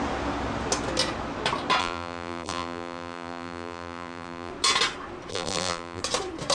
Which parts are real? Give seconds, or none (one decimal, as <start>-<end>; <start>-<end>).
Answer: 0.0-1.8; 4.5-5.3; 6.0-6.5